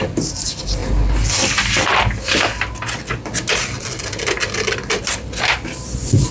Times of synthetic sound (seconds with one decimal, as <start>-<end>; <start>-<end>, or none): none